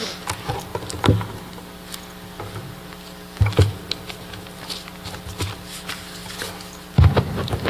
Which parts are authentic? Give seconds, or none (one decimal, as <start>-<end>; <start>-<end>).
0.0-7.7